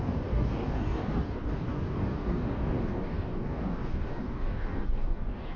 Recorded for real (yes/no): no